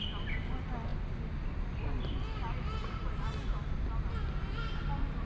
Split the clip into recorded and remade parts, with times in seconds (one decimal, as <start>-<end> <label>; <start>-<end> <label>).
0.0-5.3 recorded